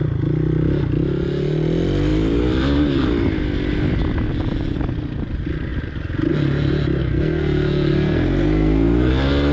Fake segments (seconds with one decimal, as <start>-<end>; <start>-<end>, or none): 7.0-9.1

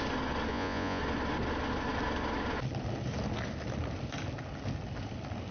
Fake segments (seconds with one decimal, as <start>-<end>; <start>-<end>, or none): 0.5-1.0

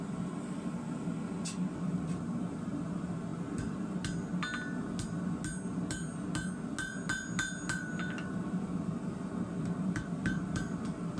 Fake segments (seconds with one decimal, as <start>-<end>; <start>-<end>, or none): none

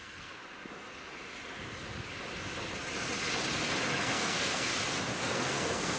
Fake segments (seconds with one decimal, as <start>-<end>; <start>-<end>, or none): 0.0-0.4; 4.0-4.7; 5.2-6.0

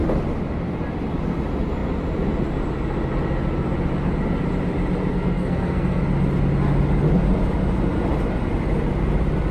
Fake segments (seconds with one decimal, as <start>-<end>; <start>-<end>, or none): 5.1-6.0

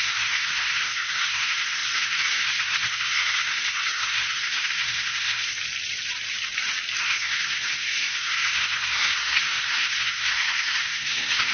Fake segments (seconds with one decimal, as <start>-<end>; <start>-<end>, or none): 0.0-5.6; 7.0-11.5

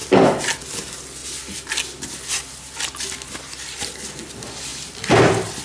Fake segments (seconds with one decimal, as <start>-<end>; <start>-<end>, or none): none